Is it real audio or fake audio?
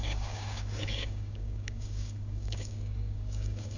fake